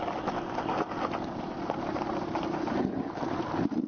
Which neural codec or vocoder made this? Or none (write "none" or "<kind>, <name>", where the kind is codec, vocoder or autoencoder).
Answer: none